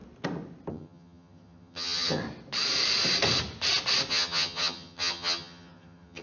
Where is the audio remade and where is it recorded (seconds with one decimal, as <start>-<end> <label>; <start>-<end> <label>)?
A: 0.0-0.7 recorded; 0.7-2.2 remade; 2.2-4.1 recorded; 4.1-6.2 remade